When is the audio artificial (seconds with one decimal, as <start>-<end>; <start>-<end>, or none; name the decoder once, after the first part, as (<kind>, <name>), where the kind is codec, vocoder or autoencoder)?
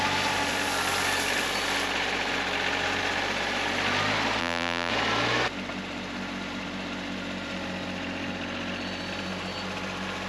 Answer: 4.4-4.9 (vocoder, BigVGAN v2)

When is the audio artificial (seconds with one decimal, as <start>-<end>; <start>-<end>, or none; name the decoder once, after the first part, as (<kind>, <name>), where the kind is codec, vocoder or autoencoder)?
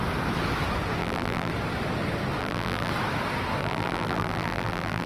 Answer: 1.0-1.5 (vocoder, BigVGAN v2); 2.4-2.9; 3.6-5.1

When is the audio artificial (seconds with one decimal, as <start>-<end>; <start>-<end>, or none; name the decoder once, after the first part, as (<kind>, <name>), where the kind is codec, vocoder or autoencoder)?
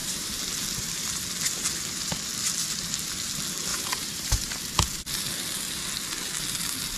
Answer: 0.0-0.6 (vocoder, BigVGAN v2); 3.7-4.6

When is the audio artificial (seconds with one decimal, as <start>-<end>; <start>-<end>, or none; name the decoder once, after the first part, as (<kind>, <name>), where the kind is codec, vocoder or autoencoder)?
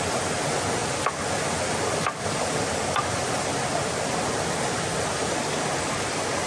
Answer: none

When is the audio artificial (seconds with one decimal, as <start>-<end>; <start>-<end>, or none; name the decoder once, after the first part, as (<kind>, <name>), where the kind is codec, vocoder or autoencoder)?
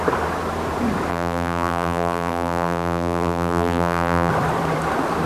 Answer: 1.1-4.3 (vocoder, BigVGAN v2)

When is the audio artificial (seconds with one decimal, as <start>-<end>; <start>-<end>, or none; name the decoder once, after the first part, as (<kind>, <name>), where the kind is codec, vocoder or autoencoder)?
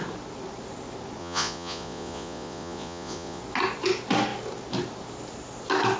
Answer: 1.2-3.4 (vocoder, Vocos)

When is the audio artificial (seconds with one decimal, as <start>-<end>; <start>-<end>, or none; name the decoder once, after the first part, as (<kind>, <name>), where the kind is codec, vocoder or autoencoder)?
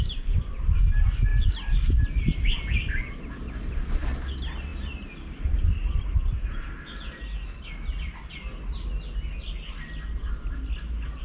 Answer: none